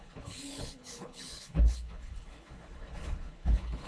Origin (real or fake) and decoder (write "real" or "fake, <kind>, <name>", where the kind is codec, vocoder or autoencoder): fake, codec, HILCodec